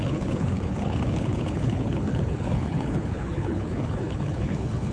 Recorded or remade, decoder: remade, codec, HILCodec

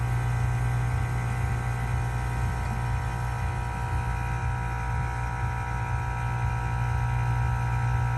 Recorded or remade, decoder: recorded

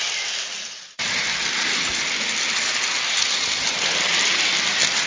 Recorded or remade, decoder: recorded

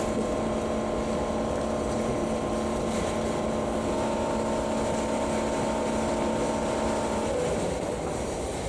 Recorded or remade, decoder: recorded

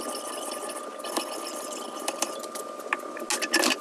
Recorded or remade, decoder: recorded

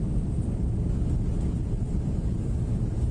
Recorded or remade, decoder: recorded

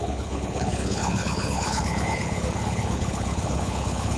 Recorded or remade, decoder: remade, codec, HILCodec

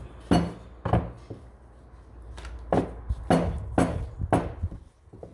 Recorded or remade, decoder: recorded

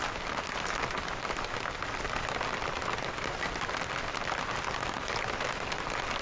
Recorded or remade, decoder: recorded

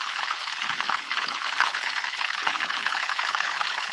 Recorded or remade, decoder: remade, codec, HILCodec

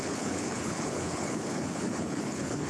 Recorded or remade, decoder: remade, codec, HILCodec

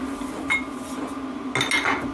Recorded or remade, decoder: recorded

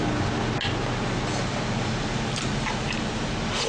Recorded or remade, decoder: recorded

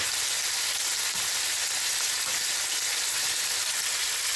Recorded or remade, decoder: recorded